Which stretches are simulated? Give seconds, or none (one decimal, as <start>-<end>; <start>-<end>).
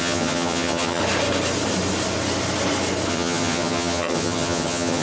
0.0-1.0; 3.1-5.0